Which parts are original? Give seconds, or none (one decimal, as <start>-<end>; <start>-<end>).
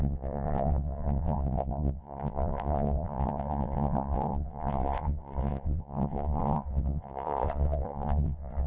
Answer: none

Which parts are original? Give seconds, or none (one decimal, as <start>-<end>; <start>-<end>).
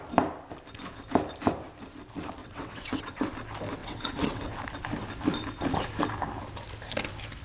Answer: 0.0-2.4; 3.3-3.8; 4.5-7.4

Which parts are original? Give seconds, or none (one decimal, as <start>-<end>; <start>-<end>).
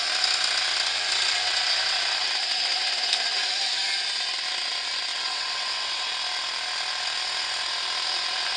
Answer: 0.0-5.1; 6.1-8.6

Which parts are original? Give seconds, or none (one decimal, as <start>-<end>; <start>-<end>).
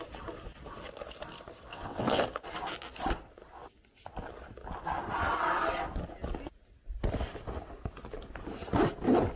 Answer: 0.0-1.7; 2.2-9.4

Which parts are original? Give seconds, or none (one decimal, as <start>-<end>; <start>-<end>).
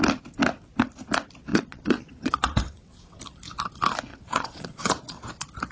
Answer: 0.0-1.5; 3.2-4.1; 5.3-5.7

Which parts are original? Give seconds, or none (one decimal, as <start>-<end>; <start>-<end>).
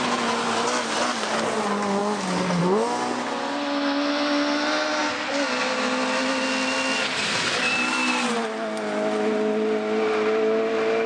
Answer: 0.0-11.1